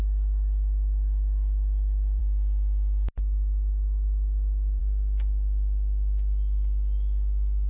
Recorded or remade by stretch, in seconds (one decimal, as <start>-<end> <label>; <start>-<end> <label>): 0.0-7.7 recorded